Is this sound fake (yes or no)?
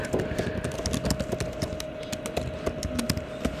no